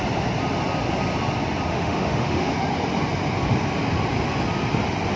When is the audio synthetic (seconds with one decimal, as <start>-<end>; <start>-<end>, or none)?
1.7-2.5